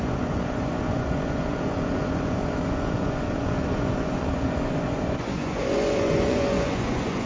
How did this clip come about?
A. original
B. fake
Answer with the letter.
B